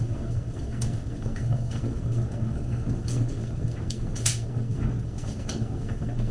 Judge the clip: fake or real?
fake